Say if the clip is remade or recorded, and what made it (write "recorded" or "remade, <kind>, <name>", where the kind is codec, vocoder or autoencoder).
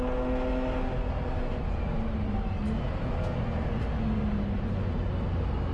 recorded